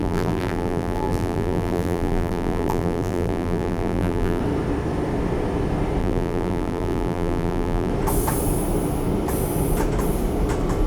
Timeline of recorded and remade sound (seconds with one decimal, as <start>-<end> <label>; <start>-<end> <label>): 0.0-4.4 remade; 4.4-6.0 recorded; 6.0-7.9 remade; 7.9-10.9 recorded